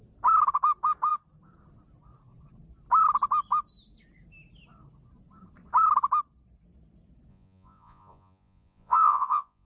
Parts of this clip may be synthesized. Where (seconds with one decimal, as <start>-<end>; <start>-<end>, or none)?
7.3-9.7